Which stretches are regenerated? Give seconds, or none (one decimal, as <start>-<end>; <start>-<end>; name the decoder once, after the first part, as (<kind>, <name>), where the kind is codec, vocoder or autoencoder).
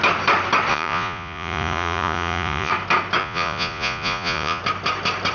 0.7-2.7 (vocoder, Vocos); 3.2-4.6